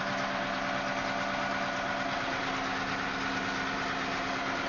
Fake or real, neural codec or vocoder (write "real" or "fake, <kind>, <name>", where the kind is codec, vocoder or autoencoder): real